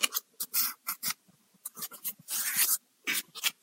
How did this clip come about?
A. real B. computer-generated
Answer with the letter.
A